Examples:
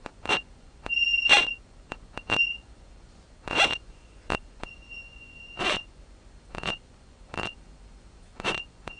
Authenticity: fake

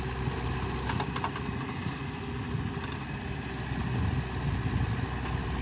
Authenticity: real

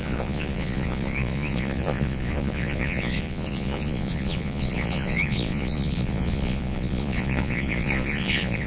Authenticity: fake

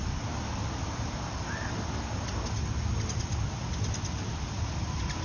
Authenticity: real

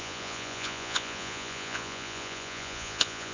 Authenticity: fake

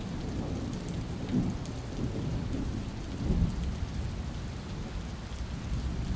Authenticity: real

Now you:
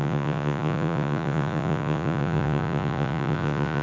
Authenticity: fake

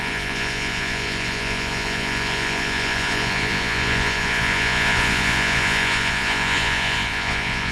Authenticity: fake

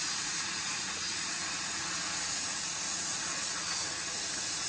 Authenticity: fake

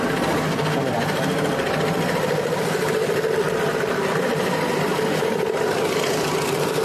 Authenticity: real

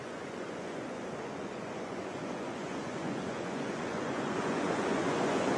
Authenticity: fake